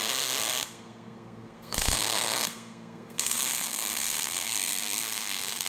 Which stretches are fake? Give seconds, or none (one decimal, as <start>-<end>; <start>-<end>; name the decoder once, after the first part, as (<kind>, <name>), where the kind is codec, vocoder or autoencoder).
0.0-5.7 (codec, SNAC)